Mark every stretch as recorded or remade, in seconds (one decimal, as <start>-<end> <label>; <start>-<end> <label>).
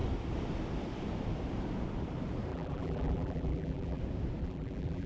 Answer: 0.0-2.5 recorded; 2.5-4.0 remade; 4.0-4.4 recorded; 4.4-5.1 remade